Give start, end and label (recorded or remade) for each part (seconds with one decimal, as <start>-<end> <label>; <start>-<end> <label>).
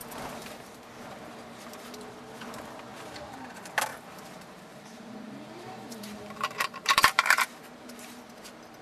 0.0-0.4 recorded; 0.4-2.1 remade; 2.1-3.9 recorded; 3.9-8.2 remade; 8.2-8.8 recorded